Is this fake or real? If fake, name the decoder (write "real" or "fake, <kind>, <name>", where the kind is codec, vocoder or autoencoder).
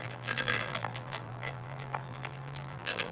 fake, vocoder, BigVGAN v2